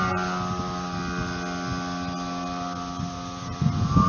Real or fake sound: real